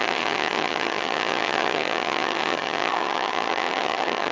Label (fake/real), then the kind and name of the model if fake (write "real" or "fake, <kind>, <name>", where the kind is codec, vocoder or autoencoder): fake, vocoder, HiFi-GAN